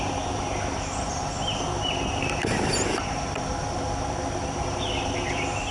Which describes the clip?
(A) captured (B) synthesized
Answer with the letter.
A